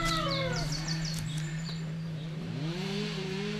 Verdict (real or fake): fake